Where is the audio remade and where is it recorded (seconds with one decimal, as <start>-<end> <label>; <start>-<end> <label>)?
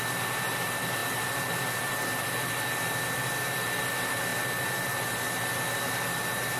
0.0-6.6 recorded